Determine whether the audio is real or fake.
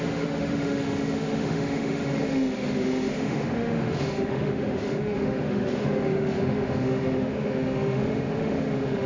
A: fake